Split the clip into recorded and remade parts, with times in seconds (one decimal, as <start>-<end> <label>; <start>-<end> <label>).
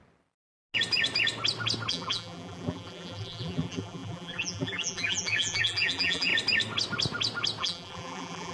0.0-1.9 recorded; 1.9-6.3 remade; 6.3-7.6 recorded; 7.6-8.5 remade